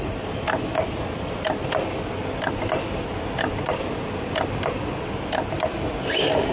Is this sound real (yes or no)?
yes